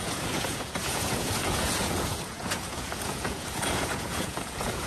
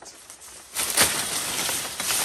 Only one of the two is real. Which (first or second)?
second